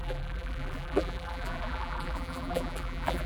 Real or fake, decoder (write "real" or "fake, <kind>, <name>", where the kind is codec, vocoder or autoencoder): fake, vocoder, BigVGAN v2